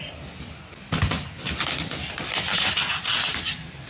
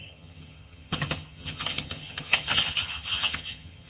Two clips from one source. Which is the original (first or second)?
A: first